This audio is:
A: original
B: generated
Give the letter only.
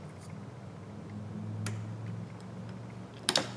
A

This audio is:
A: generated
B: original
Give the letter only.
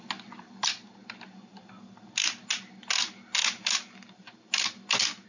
B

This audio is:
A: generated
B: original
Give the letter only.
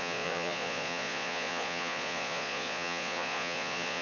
A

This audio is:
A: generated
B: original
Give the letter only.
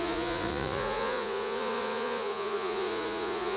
A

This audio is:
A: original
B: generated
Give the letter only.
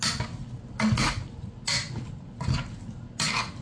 A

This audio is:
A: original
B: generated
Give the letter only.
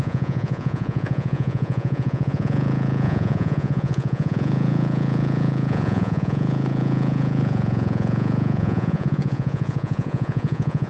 B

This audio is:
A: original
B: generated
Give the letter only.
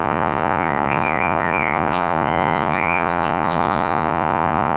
B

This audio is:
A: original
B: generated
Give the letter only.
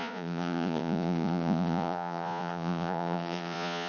B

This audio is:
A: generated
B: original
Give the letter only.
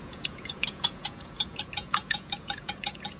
A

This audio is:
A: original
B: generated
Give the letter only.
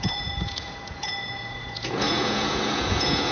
B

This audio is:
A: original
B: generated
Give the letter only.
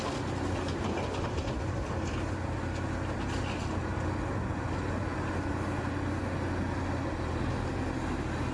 A